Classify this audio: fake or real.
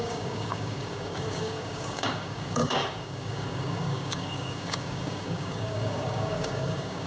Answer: fake